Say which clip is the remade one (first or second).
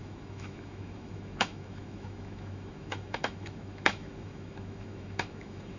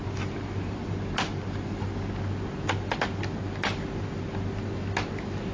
first